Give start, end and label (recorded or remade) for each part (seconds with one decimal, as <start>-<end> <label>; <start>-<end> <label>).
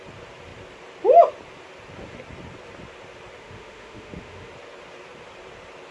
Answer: 0.0-3.4 recorded; 3.4-4.5 remade; 4.5-5.9 recorded